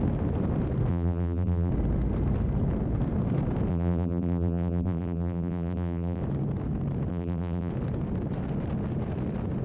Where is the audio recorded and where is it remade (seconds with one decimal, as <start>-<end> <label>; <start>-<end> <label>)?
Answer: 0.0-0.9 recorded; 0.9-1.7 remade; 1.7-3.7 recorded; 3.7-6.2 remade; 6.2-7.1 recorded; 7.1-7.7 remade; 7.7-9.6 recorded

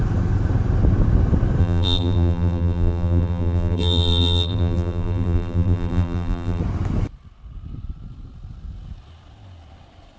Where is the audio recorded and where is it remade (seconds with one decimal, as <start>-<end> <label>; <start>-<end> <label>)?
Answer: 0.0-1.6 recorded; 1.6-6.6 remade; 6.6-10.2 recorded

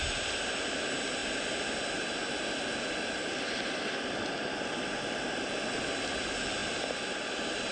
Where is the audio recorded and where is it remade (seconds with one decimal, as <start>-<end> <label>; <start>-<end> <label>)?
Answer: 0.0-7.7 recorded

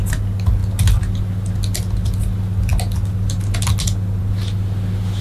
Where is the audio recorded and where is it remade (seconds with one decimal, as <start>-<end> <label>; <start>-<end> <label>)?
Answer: 0.0-5.2 recorded

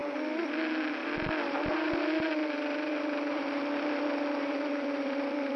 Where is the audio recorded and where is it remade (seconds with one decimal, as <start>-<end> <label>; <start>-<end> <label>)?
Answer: 0.0-2.4 recorded; 2.4-5.6 remade

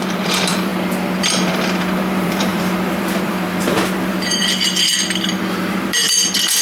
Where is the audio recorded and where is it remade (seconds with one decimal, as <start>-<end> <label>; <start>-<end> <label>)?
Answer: 0.0-0.7 remade; 0.7-1.2 recorded; 1.2-6.6 remade

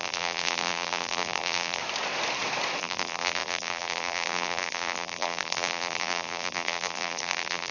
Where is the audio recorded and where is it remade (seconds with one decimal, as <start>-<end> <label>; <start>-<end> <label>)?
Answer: 0.0-1.8 remade; 1.8-2.8 recorded; 2.8-7.7 remade

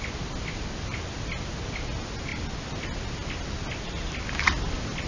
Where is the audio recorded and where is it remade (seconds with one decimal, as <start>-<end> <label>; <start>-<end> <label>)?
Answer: 0.0-2.3 recorded; 2.3-5.1 remade